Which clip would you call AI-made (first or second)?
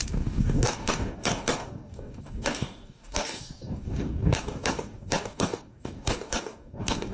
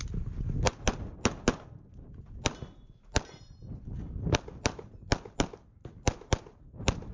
first